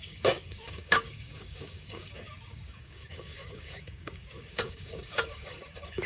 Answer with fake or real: fake